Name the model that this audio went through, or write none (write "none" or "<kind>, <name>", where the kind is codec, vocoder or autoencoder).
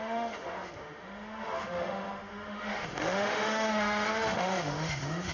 autoencoder, DAC-VAE